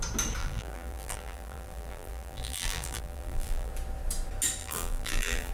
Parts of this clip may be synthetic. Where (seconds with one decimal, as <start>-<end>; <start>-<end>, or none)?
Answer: 0.4-3.7; 4.6-5.5